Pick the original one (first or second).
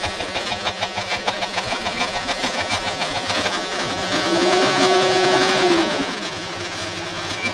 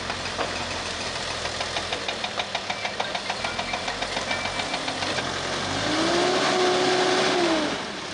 second